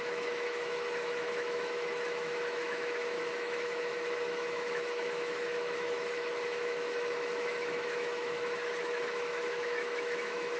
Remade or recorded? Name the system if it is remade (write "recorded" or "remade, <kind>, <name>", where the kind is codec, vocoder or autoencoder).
remade, autoencoder, DAC-VAE